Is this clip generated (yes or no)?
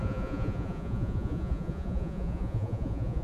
yes